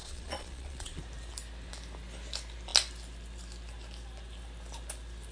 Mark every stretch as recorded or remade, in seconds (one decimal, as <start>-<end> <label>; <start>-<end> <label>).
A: 0.0-1.0 remade; 1.0-5.3 recorded

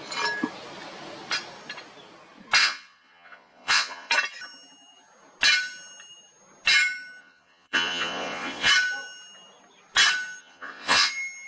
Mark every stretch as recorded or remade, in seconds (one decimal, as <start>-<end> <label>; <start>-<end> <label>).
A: 0.0-2.6 recorded; 2.6-4.1 remade; 4.1-7.2 recorded; 7.2-8.7 remade; 8.7-10.4 recorded; 10.4-11.1 remade; 11.1-11.5 recorded